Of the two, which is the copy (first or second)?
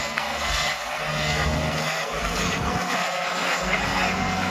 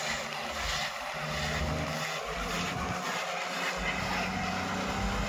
first